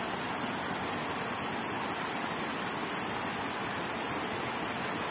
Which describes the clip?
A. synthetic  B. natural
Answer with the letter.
B